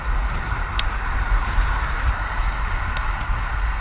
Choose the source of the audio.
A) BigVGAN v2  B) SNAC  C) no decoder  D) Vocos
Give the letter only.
C